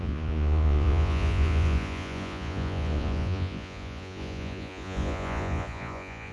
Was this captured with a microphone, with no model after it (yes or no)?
no